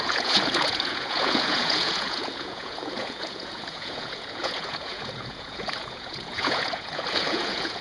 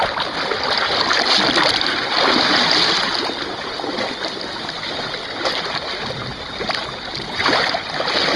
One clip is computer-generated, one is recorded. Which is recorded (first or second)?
second